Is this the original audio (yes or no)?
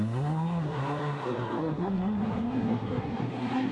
no